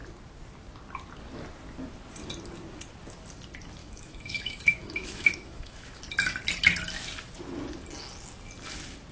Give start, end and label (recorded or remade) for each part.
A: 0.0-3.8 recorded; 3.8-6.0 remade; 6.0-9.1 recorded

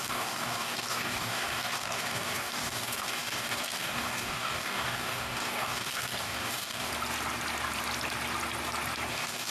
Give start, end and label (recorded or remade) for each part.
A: 0.0-6.9 remade; 6.9-9.1 recorded; 9.1-9.5 remade

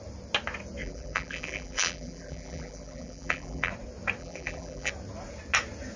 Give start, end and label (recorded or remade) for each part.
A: 0.0-0.8 recorded; 0.8-3.7 remade; 3.7-4.2 recorded; 4.2-4.9 remade; 4.9-6.0 recorded

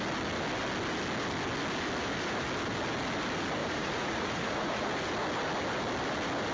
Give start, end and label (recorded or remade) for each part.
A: 0.0-3.6 recorded; 3.6-4.9 remade; 4.9-6.5 recorded

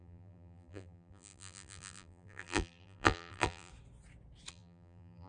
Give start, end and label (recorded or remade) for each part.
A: 0.0-3.7 remade; 3.7-4.5 recorded; 4.5-5.3 remade